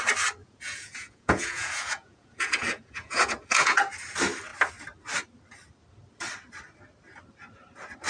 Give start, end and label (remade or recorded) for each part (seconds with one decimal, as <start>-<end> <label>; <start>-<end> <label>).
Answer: 0.0-0.4 recorded; 0.4-3.8 remade; 3.8-8.1 recorded